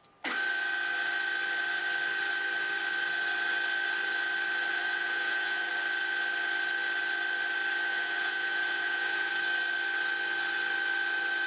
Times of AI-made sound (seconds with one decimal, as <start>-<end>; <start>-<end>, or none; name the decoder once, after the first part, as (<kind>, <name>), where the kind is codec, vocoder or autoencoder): 4.7-5.7 (vocoder, Vocos); 7.9-9.3

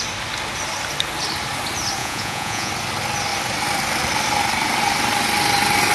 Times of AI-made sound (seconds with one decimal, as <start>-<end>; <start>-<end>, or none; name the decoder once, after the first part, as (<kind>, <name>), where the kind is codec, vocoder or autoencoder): 2.0-2.7 (vocoder, Vocos)

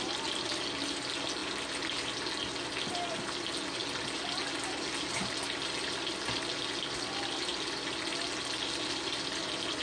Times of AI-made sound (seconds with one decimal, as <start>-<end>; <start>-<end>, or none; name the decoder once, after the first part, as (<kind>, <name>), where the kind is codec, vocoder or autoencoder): none